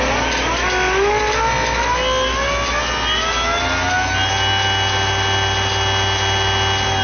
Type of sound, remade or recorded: recorded